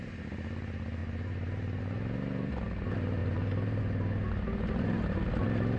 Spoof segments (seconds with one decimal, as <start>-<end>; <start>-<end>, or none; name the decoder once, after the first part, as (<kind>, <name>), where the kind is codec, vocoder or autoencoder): 1.0-1.8 (vocoder, BigVGAN v2); 3.2-3.8